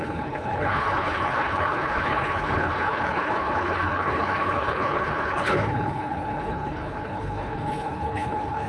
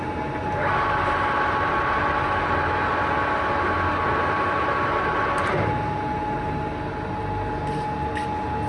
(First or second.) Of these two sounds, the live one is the second